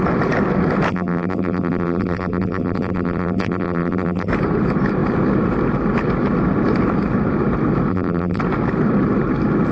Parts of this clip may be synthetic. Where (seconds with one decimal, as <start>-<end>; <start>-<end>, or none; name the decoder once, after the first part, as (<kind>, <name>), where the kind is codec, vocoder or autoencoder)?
0.9-4.3 (vocoder, BigVGAN v2); 7.9-8.4